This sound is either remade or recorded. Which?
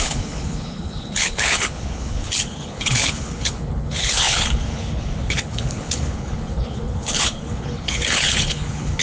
remade